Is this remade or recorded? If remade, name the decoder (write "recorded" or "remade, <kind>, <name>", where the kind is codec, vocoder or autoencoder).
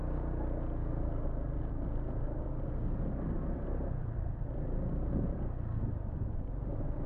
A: recorded